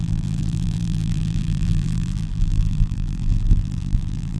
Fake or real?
fake